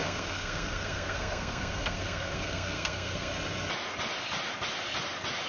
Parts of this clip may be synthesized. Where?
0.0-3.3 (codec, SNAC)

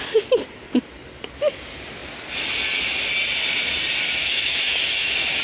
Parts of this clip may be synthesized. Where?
4.2-5.4 (autoencoder, DAC-VAE)

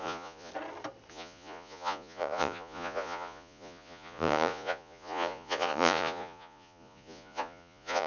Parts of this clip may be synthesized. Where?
0.0-0.5 (vocoder, Vocos); 1.1-8.1

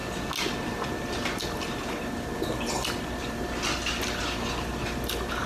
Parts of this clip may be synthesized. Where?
none